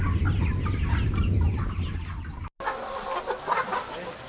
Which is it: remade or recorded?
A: recorded